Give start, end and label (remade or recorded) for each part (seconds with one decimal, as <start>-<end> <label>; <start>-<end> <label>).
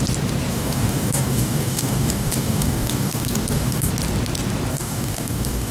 0.0-0.5 recorded; 0.5-3.9 remade; 3.9-4.7 recorded; 4.7-5.7 remade